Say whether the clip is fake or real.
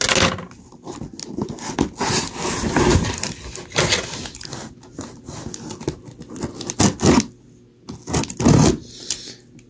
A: real